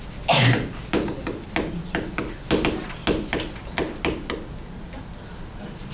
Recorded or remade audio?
recorded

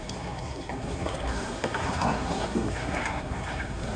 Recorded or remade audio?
remade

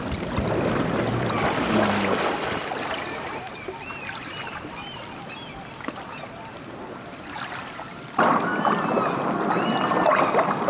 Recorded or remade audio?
recorded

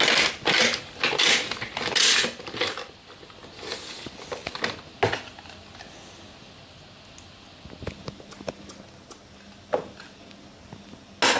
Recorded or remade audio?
recorded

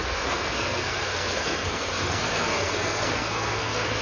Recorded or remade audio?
remade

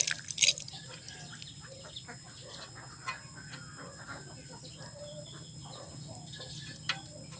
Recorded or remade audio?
recorded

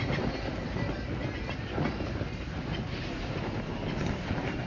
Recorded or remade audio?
recorded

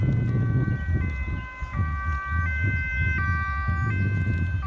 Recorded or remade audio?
recorded